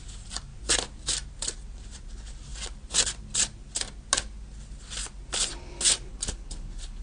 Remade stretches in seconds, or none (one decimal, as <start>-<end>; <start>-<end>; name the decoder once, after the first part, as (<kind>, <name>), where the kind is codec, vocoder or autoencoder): 6.1-7.0 (codec, HILCodec)